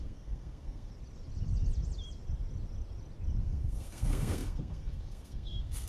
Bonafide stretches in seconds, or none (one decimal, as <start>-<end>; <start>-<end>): 0.9-3.4

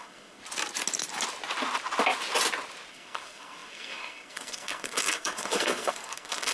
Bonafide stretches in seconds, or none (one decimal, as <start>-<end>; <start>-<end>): 0.4-2.9

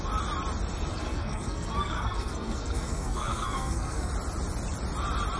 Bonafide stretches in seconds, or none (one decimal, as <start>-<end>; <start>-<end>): 0.0-0.9; 4.1-5.4

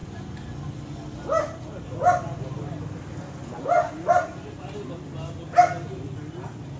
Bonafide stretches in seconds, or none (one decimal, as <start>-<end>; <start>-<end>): 0.0-6.8

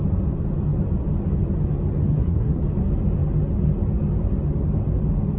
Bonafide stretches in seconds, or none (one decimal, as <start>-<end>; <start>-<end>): 0.0-2.1; 2.6-5.4